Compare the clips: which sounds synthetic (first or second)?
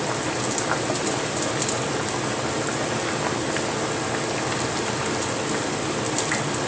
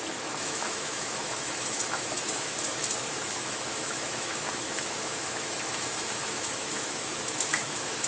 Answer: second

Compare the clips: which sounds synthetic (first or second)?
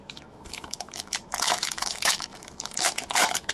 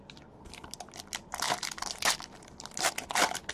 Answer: first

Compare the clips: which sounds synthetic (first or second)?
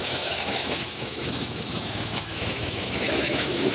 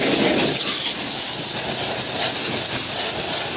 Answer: first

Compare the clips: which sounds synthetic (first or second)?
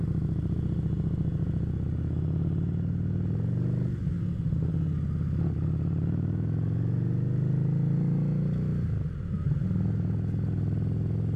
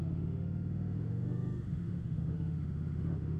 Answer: second